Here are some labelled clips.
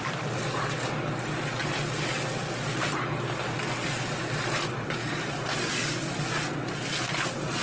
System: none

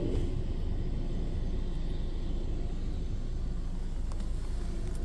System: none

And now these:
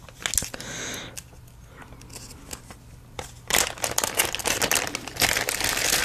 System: none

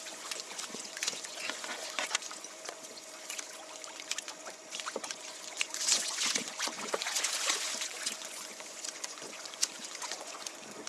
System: vocoder, Vocos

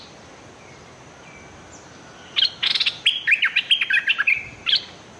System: none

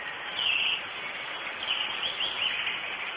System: none